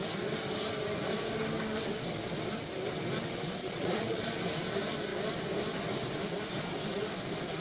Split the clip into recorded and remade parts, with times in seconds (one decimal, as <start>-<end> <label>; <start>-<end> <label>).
0.0-3.6 recorded; 3.6-4.2 remade; 4.2-7.6 recorded